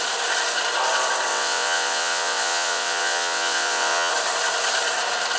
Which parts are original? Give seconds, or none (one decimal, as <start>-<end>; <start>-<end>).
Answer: 0.0-1.3; 4.1-5.4